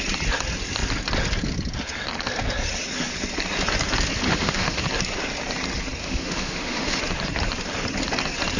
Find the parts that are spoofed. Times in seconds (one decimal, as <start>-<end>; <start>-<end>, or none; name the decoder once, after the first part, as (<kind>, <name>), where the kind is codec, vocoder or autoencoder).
4.3-4.8 (autoencoder, DAC-VAE); 6.0-7.0